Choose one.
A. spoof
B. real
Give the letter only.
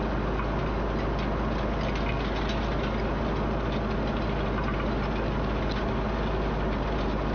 B